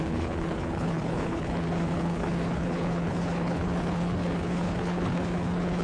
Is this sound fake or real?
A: fake